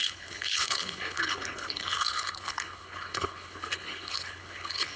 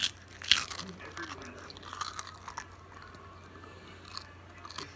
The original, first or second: second